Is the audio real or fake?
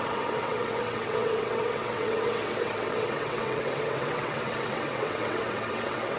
fake